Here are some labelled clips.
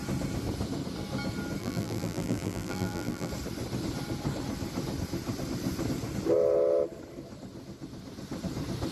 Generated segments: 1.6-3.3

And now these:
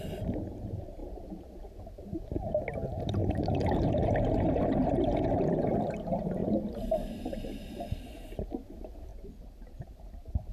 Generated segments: 3.2-5.4; 9.1-10.5

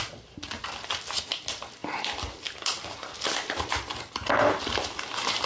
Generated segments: 1.8-5.1

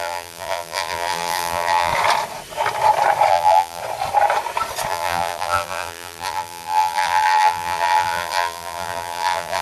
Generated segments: 0.0-1.9; 3.3-3.8; 4.9-9.6

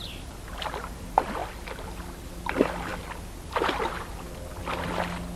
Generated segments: 1.4-2.1

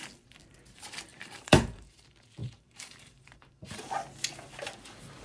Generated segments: 1.1-2.0; 2.4-3.8

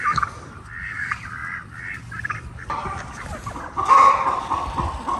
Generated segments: 0.0-5.2

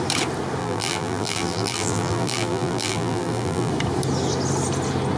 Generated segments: 0.6-3.7